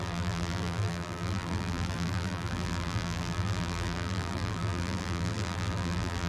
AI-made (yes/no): yes